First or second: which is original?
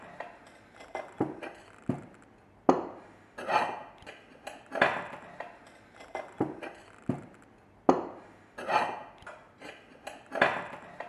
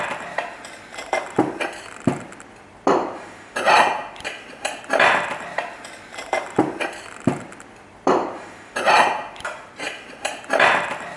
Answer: first